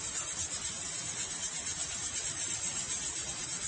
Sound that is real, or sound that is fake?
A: real